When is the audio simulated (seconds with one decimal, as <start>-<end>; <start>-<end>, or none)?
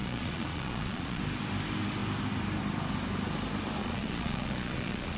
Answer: 0.0-1.2; 3.8-5.2